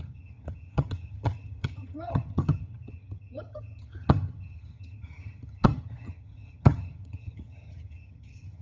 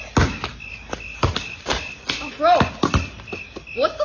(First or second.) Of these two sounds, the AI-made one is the first